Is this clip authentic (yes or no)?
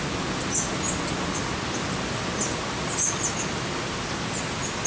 yes